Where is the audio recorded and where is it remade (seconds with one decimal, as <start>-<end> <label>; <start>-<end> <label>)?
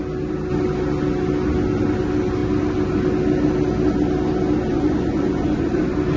0.0-4.7 recorded; 4.7-5.8 remade; 5.8-6.2 recorded